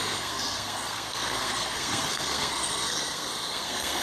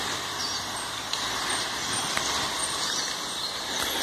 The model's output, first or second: first